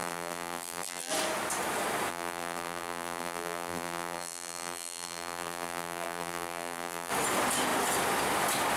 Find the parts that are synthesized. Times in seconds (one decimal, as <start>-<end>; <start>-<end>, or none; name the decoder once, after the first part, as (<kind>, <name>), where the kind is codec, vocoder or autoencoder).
0.0-1.1 (vocoder, BigVGAN v2); 2.1-7.1